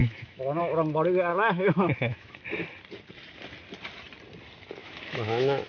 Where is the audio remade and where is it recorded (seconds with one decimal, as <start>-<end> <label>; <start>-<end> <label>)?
0.0-0.6 remade; 0.6-1.3 recorded; 1.3-2.4 remade; 2.4-4.8 recorded; 4.8-5.7 remade